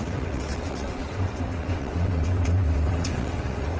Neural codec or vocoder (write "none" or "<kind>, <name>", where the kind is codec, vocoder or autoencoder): vocoder, WaveNeXt